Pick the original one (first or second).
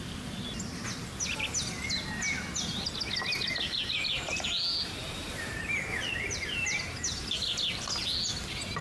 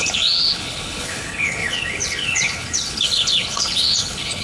first